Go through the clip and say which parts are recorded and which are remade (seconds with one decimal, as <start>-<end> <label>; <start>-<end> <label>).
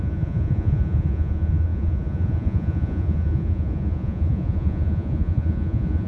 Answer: 0.0-6.1 remade